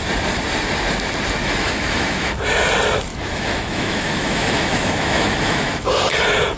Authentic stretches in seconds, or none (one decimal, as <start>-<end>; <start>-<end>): 0.0-1.4; 2.3-3.1; 5.7-6.6